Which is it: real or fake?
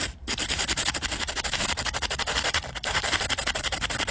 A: fake